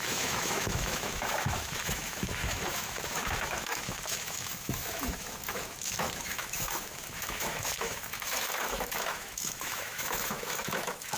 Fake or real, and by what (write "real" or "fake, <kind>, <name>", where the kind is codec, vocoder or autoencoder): fake, autoencoder, DAC-VAE